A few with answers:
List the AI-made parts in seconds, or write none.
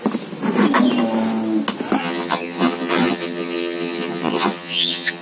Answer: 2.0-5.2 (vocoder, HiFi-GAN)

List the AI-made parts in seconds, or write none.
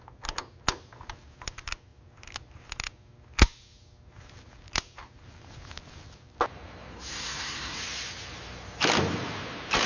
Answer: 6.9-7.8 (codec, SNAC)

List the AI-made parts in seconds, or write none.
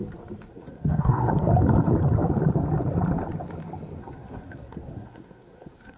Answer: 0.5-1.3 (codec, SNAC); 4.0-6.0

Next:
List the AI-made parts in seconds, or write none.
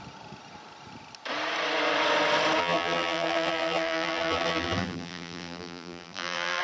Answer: 2.6-6.6 (vocoder, BigVGAN v2)